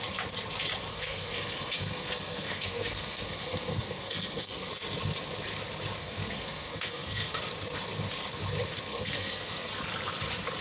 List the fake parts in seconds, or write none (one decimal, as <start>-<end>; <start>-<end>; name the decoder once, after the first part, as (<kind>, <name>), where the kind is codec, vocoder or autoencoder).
0.9-4.7 (codec, SNAC); 6.0-7.4; 8.9-9.7